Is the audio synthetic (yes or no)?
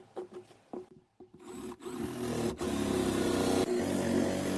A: no